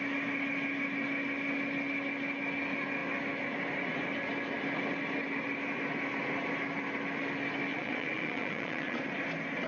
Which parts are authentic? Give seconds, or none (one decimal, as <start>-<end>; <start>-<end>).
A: 0.0-7.7; 9.0-9.7

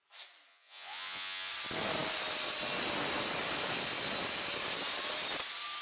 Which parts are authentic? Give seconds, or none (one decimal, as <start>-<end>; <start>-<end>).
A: 0.0-0.5; 1.5-5.8

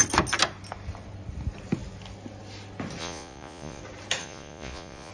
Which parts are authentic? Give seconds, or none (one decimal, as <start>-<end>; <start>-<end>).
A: 0.0-3.0; 3.8-4.2

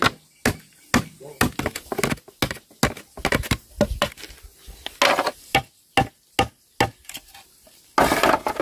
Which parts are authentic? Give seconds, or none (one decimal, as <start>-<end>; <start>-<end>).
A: 0.0-8.6

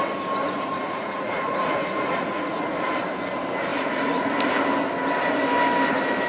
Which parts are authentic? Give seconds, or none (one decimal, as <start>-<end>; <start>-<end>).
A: 0.0-0.4; 2.9-3.7; 4.3-6.3